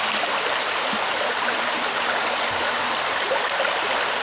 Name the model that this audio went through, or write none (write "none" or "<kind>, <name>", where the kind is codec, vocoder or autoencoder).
none